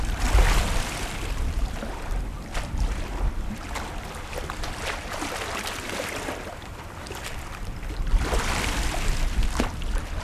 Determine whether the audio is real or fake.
real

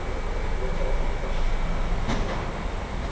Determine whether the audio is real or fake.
real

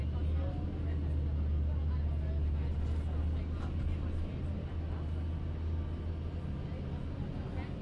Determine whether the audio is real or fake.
real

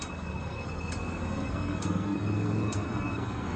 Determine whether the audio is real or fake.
fake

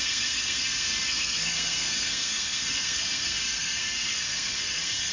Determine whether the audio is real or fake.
fake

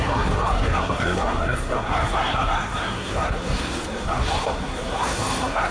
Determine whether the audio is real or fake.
fake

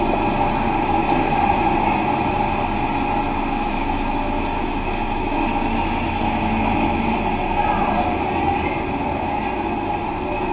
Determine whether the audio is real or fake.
real